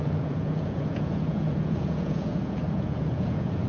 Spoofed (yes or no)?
yes